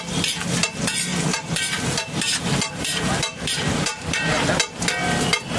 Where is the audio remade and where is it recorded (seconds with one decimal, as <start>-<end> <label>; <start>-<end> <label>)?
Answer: 0.0-1.1 recorded; 1.1-4.5 remade; 4.5-5.6 recorded